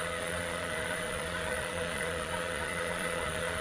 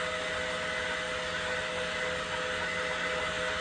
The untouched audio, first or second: second